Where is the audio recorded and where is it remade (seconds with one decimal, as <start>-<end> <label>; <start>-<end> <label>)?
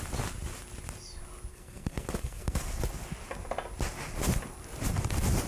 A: 0.0-1.5 recorded; 1.5-2.6 remade; 2.6-5.5 recorded